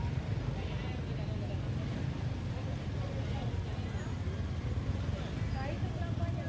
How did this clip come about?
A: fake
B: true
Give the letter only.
B